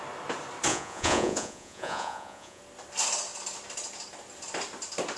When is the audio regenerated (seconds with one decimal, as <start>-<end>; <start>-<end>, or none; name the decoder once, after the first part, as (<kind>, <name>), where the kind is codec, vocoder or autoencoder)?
0.7-2.6 (vocoder, Vocos)